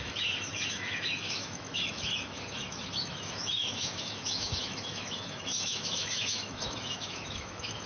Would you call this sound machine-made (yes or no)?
yes